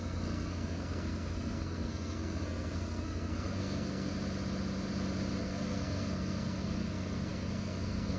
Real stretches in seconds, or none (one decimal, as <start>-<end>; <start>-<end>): 4.1-5.4